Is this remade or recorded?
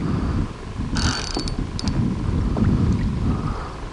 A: recorded